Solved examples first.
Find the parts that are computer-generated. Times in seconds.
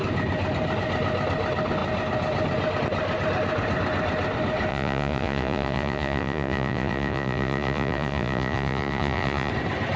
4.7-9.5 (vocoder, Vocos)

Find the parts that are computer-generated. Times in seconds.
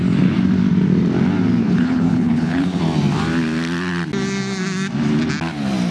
1.6-2.8 (codec, HILCodec)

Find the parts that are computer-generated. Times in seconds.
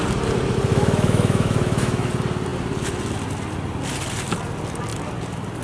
0.7-2.1 (autoencoder, DAC-VAE)